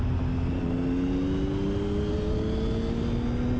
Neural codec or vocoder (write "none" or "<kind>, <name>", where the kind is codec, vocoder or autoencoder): none